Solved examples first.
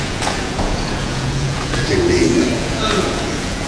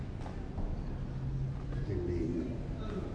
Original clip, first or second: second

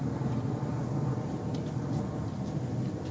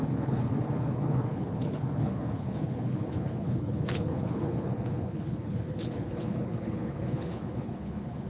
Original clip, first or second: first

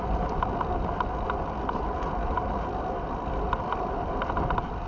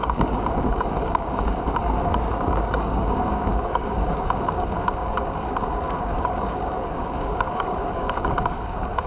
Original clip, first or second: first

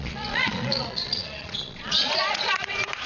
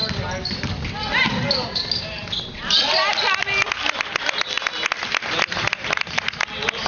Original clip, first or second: second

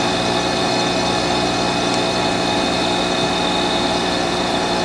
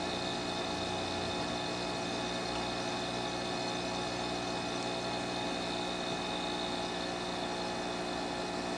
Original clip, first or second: second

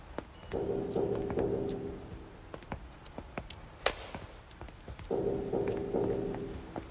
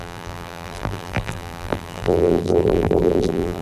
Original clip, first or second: first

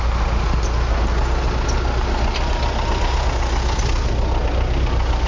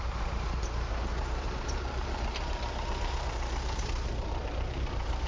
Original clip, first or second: first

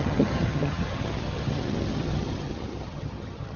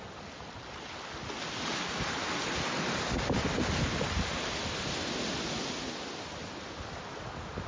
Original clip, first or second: second